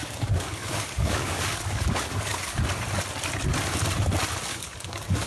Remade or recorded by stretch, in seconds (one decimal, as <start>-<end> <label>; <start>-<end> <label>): 0.0-2.6 remade; 2.6-4.5 recorded; 4.5-5.3 remade